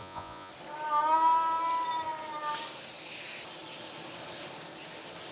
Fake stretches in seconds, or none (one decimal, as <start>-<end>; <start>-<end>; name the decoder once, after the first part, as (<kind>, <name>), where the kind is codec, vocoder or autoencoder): 0.0-0.5 (vocoder, Vocos)